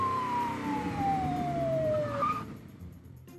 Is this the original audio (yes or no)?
no